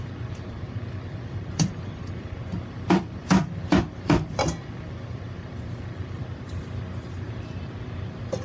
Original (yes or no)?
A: no